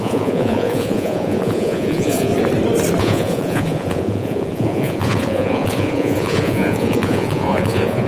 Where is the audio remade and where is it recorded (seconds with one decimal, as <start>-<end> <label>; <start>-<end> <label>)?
0.0-2.3 remade; 2.3-3.0 recorded; 3.0-8.1 remade